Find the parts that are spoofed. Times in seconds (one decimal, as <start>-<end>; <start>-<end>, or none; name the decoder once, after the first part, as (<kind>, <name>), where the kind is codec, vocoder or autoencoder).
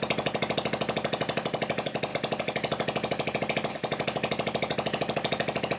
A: none